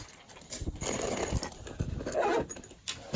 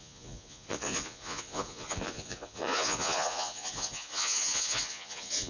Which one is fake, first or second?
second